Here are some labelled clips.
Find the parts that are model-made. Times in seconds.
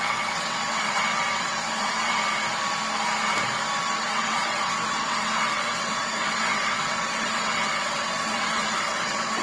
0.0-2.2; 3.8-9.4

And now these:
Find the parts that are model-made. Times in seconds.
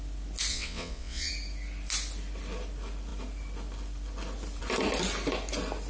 0.5-1.3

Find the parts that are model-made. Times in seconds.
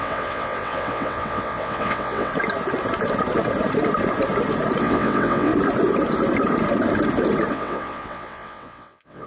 0.0-2.3; 4.8-5.5; 7.5-9.3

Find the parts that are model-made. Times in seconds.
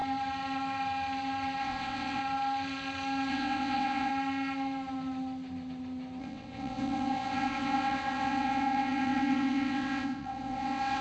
1.6-2.2; 3.3-4.1; 6.2-11.0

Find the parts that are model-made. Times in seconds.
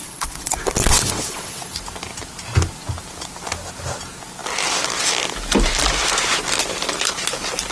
0.0-1.8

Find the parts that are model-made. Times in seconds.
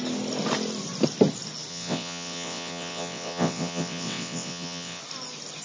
1.7-5.0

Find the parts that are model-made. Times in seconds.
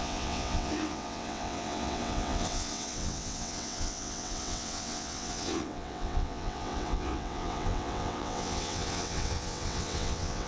0.0-10.5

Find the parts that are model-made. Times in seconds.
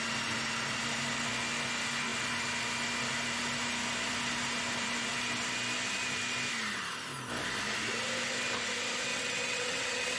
9.1-10.2